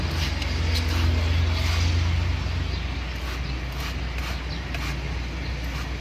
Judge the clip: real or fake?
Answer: real